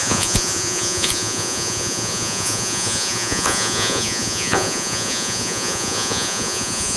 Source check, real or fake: fake